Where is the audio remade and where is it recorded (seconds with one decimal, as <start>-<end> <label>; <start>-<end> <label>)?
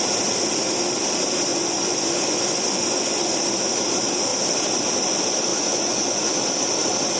0.0-1.5 recorded; 1.5-3.2 remade; 3.2-5.5 recorded; 5.5-6.4 remade; 6.4-7.2 recorded